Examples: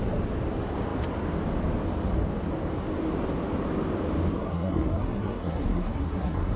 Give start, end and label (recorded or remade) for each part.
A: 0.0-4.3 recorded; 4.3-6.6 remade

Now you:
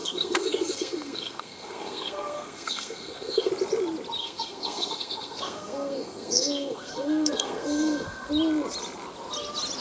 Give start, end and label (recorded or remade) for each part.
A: 0.0-3.5 remade; 3.5-4.2 recorded; 4.2-8.3 remade; 8.3-9.8 recorded

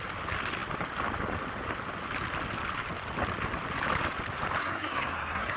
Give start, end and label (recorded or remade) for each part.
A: 0.0-4.6 recorded; 4.6-5.6 remade

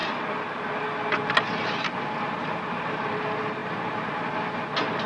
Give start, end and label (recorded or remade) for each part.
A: 0.0-5.1 recorded

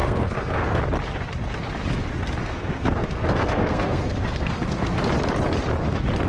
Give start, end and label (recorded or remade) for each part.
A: 0.0-0.8 remade; 0.8-2.4 recorded; 2.4-5.0 remade; 5.0-6.3 recorded

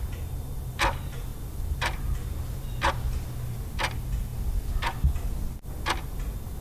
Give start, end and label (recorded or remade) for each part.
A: 0.0-6.6 recorded

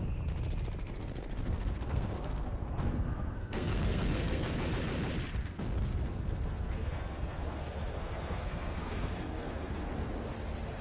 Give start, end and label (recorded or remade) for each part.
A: 0.0-0.8 recorded; 0.8-4.6 remade; 4.6-5.4 recorded; 5.4-9.9 remade; 9.9-10.8 recorded

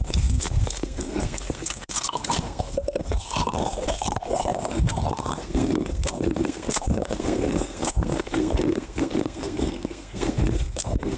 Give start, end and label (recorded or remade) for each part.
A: 0.0-11.2 remade